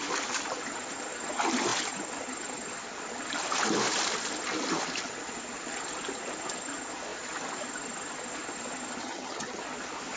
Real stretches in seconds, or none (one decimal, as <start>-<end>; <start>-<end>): 0.0-9.0; 9.6-10.2